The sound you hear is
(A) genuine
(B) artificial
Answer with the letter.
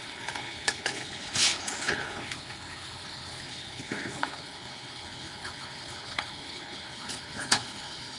B